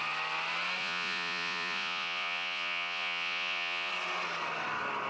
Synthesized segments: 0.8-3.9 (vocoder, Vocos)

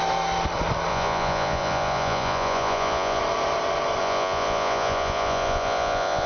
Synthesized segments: 0.9-3.2 (vocoder, Vocos); 4.0-6.3

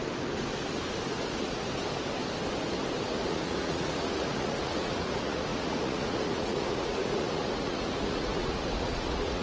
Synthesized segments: 1.2-1.7 (vocoder, Vocos); 3.1-9.4

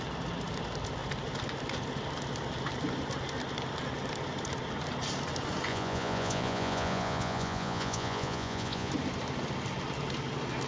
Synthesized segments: 5.7-8.9 (vocoder, Vocos)